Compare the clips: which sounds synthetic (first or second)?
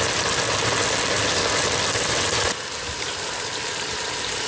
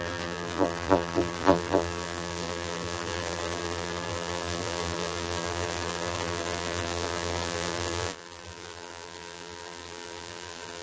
second